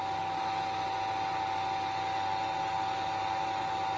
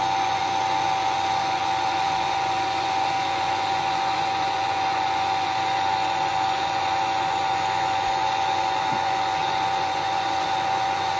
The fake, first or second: second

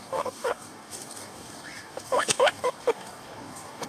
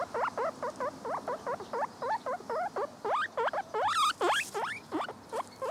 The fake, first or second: first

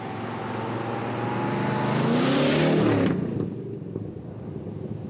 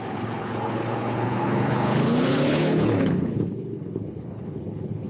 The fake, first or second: second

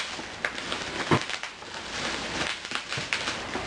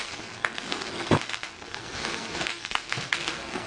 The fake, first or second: second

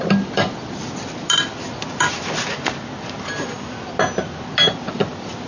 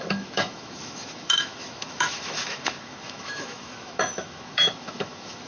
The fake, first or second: second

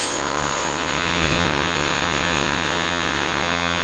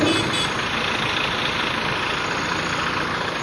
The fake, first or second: first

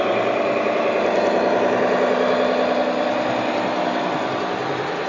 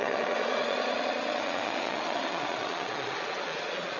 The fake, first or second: second